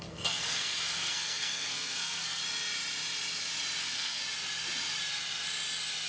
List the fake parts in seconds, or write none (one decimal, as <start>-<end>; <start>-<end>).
0.0-2.4; 3.8-4.2